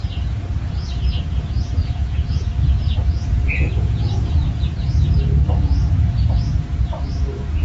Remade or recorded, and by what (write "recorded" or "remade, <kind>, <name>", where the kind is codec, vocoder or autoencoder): remade, vocoder, Vocos